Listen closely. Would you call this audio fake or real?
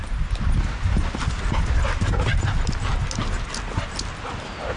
real